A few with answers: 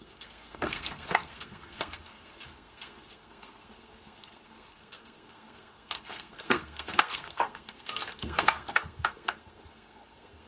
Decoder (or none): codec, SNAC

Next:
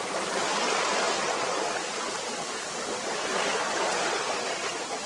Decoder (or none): none